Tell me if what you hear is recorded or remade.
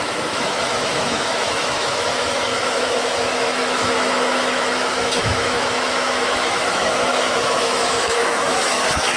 remade